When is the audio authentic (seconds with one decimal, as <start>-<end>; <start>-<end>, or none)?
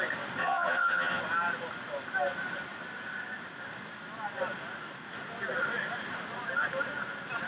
0.0-0.4; 1.2-7.5